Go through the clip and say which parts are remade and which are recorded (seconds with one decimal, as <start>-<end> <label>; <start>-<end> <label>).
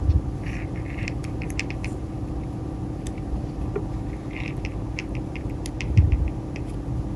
0.0-7.2 recorded